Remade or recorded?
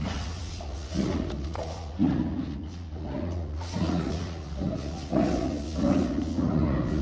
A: remade